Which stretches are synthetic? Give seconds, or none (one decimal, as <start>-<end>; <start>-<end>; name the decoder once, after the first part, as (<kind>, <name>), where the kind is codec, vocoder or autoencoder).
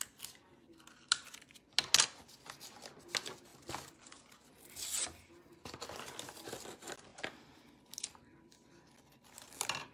none